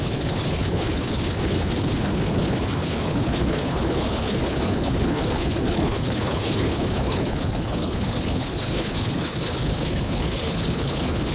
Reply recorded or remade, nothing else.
remade